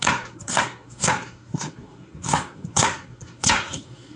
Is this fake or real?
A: fake